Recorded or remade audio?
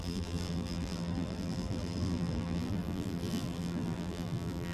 remade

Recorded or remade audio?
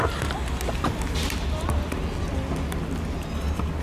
recorded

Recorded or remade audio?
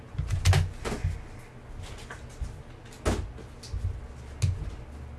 recorded